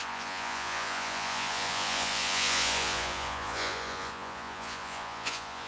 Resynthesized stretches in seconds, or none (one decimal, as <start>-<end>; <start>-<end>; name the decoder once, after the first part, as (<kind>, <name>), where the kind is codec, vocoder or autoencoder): 0.0-5.7 (vocoder, Vocos)